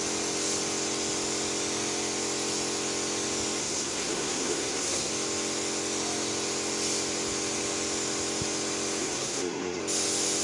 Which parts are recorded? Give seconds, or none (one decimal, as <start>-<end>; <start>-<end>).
0.0-3.6; 5.1-9.0; 9.8-10.4